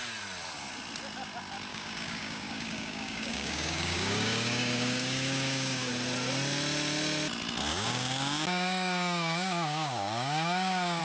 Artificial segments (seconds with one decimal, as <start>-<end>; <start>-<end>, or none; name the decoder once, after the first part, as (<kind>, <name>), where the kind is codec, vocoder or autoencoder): 1.7-5.9 (codec, DAC); 7.7-11.0